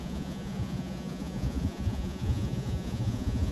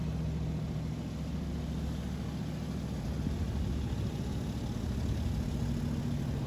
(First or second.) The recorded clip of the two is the second